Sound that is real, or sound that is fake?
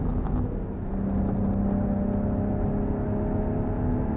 real